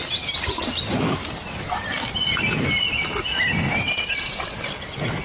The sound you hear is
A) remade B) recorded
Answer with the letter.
B